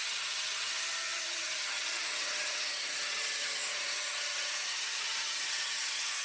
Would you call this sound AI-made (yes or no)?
yes